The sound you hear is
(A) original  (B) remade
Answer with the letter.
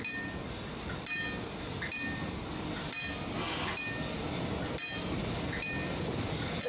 A